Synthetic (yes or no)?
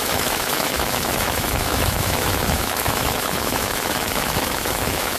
yes